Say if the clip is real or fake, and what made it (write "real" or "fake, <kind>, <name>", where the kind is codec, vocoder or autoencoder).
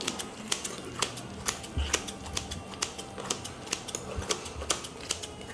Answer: real